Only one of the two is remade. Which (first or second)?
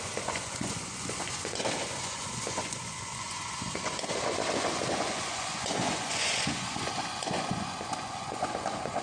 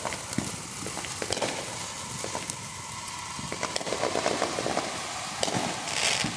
first